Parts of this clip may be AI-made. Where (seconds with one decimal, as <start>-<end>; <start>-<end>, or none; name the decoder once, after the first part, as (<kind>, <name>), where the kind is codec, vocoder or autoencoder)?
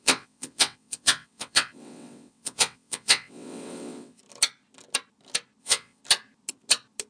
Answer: 0.0-4.2 (vocoder, WaveNeXt); 5.6-6.0